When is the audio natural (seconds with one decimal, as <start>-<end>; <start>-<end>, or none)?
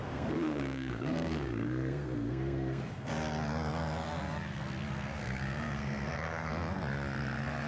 3.1-5.2; 6.5-7.7